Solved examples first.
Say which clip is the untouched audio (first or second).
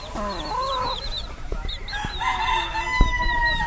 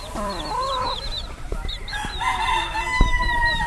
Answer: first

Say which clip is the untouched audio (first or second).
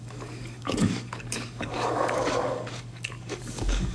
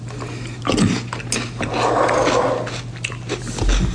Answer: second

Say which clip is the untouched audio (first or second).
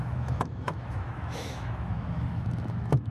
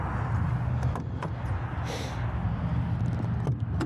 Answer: second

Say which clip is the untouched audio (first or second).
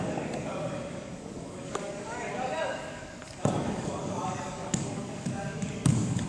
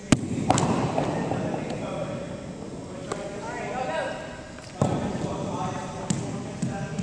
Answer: second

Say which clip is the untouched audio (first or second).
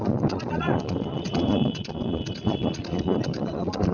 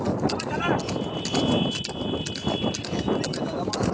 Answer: second